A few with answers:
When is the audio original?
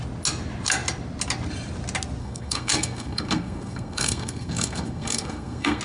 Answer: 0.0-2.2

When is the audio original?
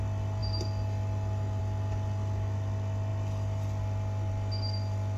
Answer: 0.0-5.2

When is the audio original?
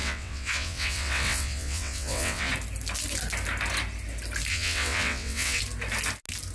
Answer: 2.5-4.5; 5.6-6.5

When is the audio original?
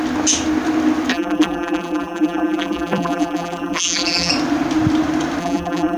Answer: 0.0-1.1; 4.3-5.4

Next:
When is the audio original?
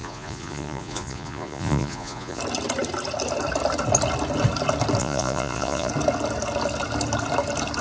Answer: 2.4-5.0; 5.9-7.8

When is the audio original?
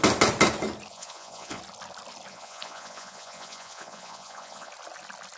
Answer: 0.0-0.9; 1.6-2.3; 4.7-5.4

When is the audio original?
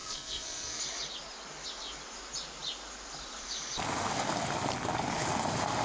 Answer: 0.8-5.8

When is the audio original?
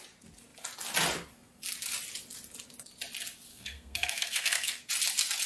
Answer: 0.0-3.5; 4.9-5.5